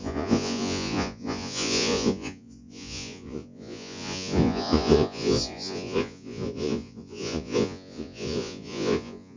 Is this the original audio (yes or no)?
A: no